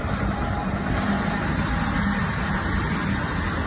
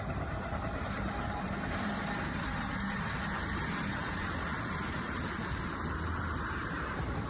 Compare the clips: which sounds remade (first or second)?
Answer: second